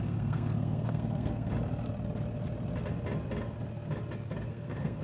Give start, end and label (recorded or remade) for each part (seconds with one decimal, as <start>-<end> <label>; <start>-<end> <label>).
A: 0.0-1.5 remade; 1.5-4.5 recorded; 4.5-5.0 remade